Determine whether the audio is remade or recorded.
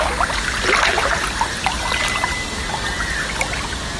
recorded